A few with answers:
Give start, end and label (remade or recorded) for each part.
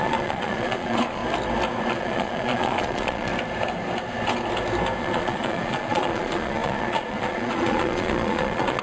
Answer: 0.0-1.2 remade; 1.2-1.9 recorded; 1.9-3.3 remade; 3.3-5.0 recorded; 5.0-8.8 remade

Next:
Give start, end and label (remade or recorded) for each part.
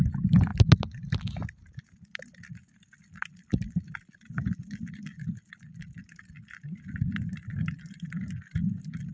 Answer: 0.0-9.1 recorded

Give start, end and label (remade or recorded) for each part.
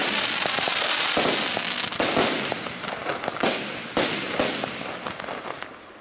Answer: 0.0-6.0 recorded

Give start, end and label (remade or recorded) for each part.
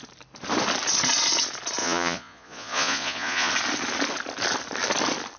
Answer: 0.0-1.8 recorded; 1.8-3.5 remade; 3.5-5.4 recorded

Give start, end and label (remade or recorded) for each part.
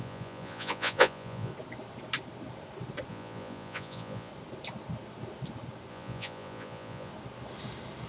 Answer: 0.0-1.5 remade; 1.5-3.1 recorded; 3.1-4.3 remade; 4.3-5.9 recorded; 5.9-7.1 remade; 7.1-8.1 recorded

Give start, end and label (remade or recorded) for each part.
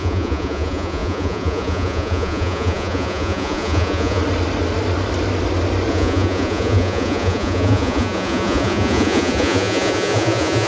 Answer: 0.0-4.2 remade; 4.2-5.9 recorded; 5.9-10.7 remade